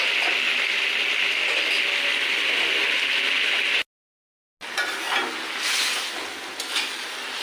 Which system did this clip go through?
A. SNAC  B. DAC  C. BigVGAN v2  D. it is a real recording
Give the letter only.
D